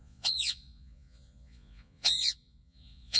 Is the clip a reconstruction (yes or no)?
yes